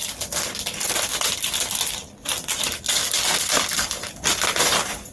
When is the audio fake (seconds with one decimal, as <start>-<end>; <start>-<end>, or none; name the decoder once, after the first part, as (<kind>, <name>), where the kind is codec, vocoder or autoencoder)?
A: none